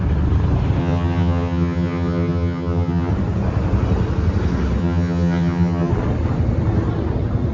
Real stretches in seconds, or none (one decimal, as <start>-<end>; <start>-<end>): 0.0-0.8; 3.1-4.8; 5.9-7.5